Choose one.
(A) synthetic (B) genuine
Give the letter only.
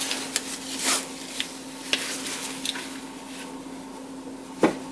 B